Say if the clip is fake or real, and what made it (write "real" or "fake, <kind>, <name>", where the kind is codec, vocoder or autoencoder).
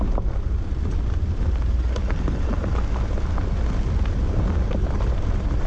real